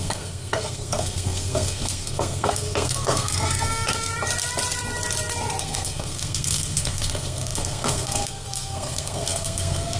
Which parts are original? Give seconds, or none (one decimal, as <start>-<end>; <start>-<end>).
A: 4.1-5.6